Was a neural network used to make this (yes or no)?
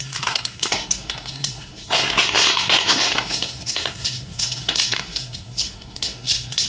yes